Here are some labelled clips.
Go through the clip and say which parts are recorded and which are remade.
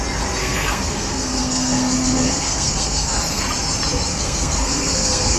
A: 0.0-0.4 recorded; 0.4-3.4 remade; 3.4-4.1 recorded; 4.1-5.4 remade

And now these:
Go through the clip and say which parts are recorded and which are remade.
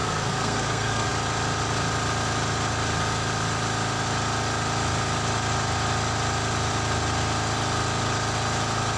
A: 0.0-1.1 remade; 1.1-9.0 recorded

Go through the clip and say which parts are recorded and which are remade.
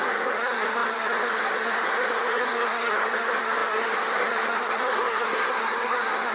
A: 0.0-6.3 remade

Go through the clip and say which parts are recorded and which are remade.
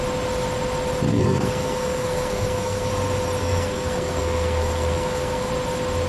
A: 0.0-1.1 recorded; 1.1-2.9 remade; 2.9-3.4 recorded; 3.4-5.5 remade; 5.5-6.1 recorded